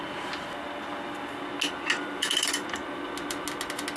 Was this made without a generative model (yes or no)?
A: yes